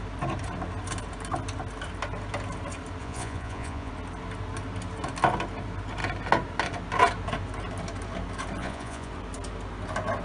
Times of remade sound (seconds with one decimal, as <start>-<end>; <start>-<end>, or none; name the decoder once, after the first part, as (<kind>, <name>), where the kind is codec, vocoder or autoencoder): 3.0-3.9 (vocoder, Vocos); 8.6-9.1